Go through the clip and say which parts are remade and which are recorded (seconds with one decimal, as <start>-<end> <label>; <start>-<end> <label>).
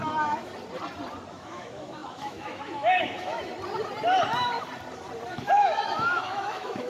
0.0-0.5 remade; 0.5-1.3 recorded; 1.3-3.5 remade; 3.5-5.3 recorded; 5.3-6.9 remade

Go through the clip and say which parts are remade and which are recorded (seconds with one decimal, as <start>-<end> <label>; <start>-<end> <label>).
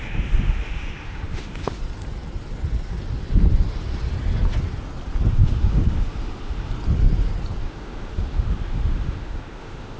0.0-1.8 remade; 1.8-5.3 recorded; 5.3-6.7 remade; 6.7-7.6 recorded; 7.6-10.0 remade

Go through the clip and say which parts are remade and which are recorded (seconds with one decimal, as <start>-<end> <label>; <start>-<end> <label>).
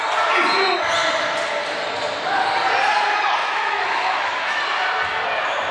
0.0-3.4 recorded; 3.4-4.6 remade; 4.6-5.7 recorded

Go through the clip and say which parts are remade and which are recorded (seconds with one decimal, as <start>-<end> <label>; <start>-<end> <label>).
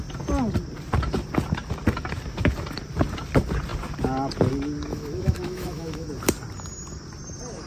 0.0-4.9 recorded; 4.9-6.1 remade; 6.1-7.7 recorded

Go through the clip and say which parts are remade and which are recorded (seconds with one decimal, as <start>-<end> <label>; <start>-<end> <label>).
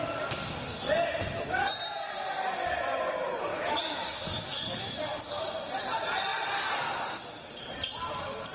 0.0-3.5 recorded; 3.5-5.4 remade; 5.4-8.5 recorded